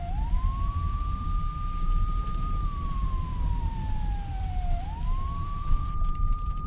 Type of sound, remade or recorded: remade